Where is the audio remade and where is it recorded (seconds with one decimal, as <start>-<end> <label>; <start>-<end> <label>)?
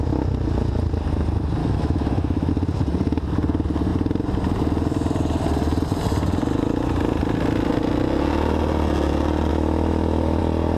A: 0.0-1.6 recorded; 1.6-2.5 remade; 2.5-9.5 recorded; 9.5-10.4 remade; 10.4-10.8 recorded